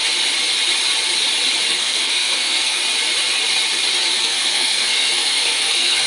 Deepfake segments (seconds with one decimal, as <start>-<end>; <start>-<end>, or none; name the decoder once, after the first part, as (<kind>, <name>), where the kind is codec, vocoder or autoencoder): 1.7-2.8 (codec, SNAC); 4.2-6.1